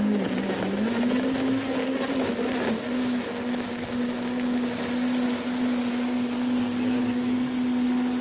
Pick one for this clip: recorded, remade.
recorded